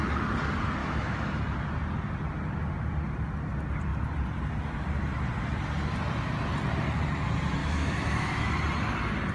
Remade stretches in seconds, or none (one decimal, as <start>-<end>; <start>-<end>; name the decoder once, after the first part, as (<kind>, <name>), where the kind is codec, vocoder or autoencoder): 0.8-1.4 (autoencoder, DAC-VAE); 7.6-8.5